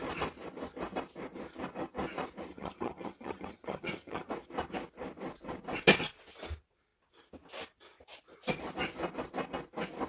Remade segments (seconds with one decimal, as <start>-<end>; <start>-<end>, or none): 2.5-4.3